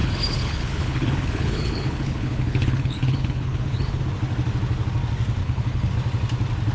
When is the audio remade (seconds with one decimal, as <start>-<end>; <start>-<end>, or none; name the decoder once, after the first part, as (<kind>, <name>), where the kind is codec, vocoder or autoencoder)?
0.0-4.0 (codec, HILCodec); 5.4-5.9

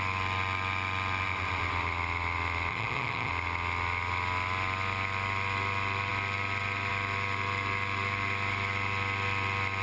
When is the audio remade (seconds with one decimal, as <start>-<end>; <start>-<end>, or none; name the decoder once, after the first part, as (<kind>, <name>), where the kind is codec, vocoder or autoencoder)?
2.7-3.3 (vocoder, HiFi-GAN)

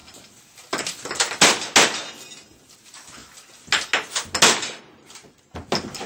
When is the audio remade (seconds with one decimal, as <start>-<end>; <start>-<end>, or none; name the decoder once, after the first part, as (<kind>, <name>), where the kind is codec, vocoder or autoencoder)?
none

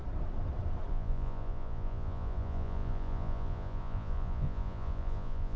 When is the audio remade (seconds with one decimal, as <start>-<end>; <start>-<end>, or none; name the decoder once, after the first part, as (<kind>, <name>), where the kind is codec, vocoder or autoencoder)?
0.9-5.6 (vocoder, Vocos)

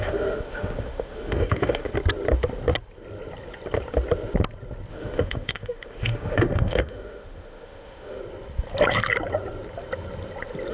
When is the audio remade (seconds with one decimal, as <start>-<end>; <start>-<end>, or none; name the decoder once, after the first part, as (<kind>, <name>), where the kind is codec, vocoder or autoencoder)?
0.0-1.9 (autoencoder, DAC-VAE); 4.9-8.2

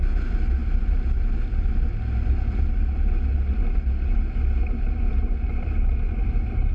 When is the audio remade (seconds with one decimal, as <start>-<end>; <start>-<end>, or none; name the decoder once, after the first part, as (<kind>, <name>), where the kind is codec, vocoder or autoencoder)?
none

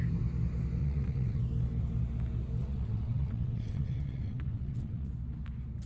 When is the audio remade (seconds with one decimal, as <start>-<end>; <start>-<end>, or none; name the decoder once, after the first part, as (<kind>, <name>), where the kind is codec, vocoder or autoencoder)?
0.8-1.4 (vocoder, WaveNeXt); 2.6-5.1